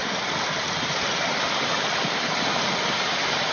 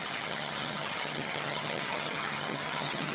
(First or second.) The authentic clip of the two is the first